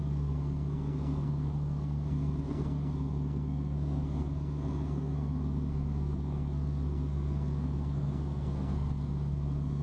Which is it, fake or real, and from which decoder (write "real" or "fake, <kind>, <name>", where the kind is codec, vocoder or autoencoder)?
fake, codec, SNAC